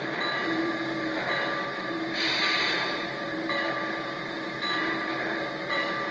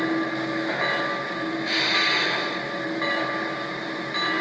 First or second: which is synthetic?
first